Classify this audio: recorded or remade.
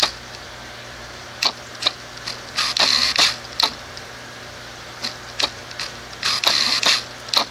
recorded